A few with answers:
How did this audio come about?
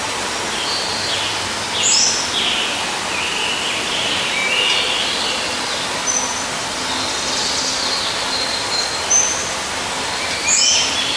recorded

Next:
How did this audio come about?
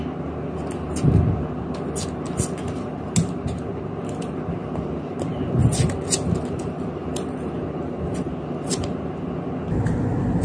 recorded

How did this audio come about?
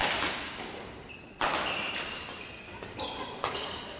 recorded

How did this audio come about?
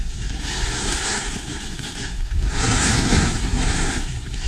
remade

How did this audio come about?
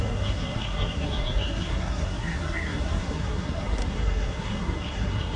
remade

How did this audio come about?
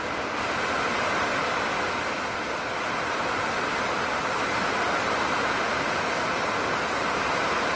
recorded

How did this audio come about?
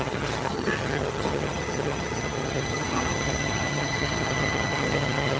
remade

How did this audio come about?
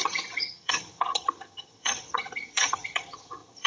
remade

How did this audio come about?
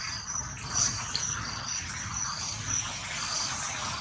recorded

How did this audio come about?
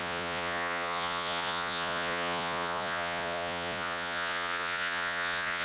remade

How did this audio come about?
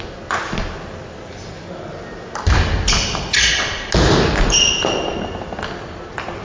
recorded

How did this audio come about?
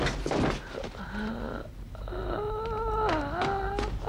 recorded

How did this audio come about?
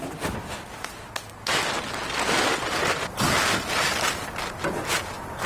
recorded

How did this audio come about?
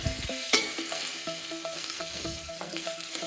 remade